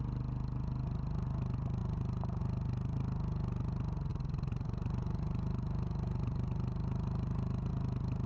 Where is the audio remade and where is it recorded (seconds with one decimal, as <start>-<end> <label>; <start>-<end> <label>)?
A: 0.0-1.8 recorded; 1.8-2.4 remade; 2.4-4.1 recorded; 4.1-7.7 remade; 7.7-8.3 recorded